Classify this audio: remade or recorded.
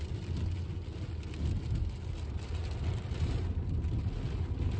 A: recorded